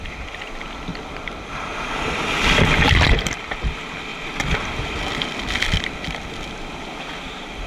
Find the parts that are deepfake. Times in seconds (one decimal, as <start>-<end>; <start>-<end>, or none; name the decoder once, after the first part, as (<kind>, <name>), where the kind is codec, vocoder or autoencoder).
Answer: 0.9-1.5 (vocoder, BigVGAN v2)

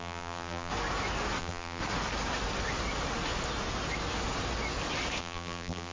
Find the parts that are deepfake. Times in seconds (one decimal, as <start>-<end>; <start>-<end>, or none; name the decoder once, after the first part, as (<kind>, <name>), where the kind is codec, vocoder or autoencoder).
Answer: 0.0-0.7 (vocoder, BigVGAN v2); 1.4-1.8; 5.2-5.9